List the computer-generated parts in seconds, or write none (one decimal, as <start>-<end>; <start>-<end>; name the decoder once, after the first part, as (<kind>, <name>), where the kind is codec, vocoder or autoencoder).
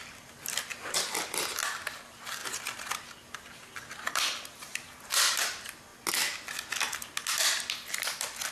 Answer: 0.0-2.4 (vocoder, BigVGAN v2); 4.1-5.9